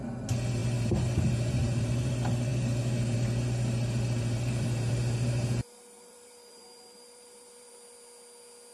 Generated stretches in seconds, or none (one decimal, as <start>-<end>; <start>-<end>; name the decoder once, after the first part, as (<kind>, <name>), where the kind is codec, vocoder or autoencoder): 0.6-2.1 (vocoder, BigVGAN v2); 2.5-7.7